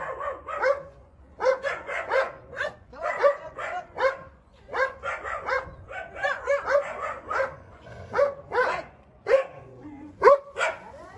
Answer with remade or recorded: remade